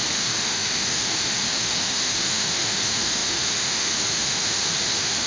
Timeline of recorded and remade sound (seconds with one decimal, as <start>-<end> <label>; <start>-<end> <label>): 0.0-5.3 remade

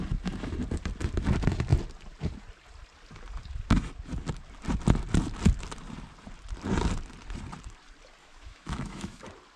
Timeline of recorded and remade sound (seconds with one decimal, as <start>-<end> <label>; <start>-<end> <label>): 0.0-8.2 recorded; 8.2-9.2 remade; 9.2-9.6 recorded